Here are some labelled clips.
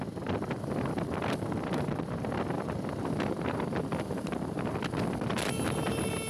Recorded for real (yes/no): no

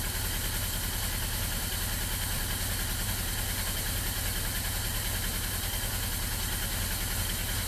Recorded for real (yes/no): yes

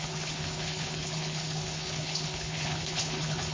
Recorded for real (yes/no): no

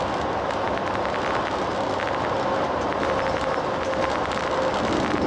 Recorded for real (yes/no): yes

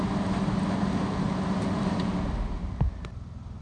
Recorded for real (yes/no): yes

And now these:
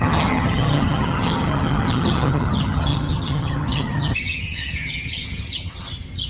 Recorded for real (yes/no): no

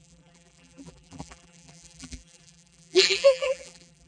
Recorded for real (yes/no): no